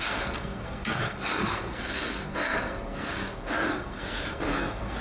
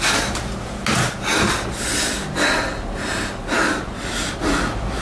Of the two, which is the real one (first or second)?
second